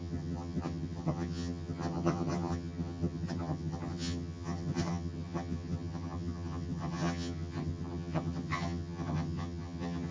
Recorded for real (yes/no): no